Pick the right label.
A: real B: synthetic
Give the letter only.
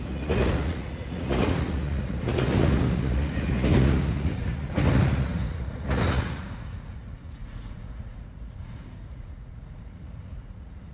B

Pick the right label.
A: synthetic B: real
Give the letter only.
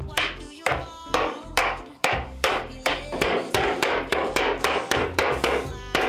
A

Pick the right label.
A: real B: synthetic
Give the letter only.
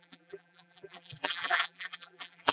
B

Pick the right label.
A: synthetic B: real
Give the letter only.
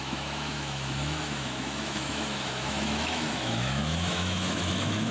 A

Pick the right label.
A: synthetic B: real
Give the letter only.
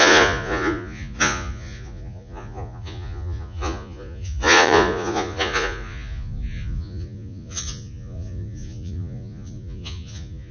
A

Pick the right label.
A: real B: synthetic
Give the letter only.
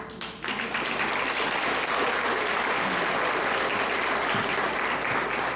A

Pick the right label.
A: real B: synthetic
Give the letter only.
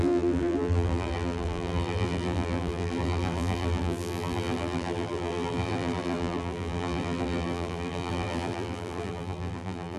B